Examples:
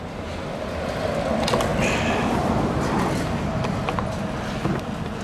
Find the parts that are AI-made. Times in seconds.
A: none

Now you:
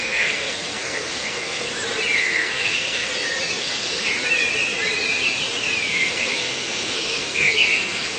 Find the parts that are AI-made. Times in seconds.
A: 0.0-1.7 (codec, SNAC); 2.2-3.1; 3.6-4.1; 5.9-8.2

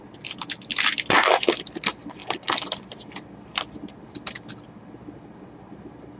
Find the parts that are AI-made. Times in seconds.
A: none